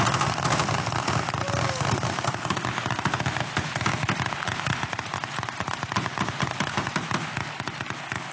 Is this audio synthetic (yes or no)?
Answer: no